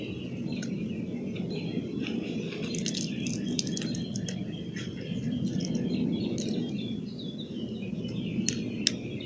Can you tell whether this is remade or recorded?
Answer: recorded